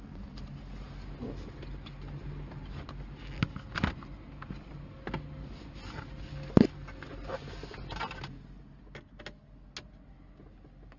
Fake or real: real